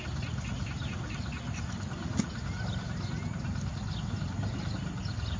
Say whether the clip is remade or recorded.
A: recorded